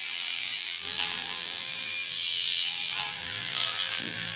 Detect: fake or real fake